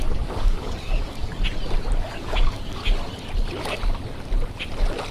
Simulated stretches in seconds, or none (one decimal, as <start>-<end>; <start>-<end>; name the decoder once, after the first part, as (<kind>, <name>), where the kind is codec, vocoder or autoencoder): 0.0-1.3 (codec, DAC); 2.0-2.8